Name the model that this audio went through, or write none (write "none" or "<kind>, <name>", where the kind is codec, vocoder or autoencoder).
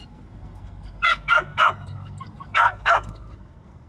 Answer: codec, SNAC